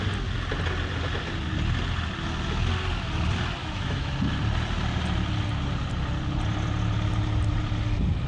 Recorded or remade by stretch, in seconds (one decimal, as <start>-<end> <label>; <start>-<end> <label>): 0.0-3.6 recorded; 3.6-4.1 remade; 4.1-8.3 recorded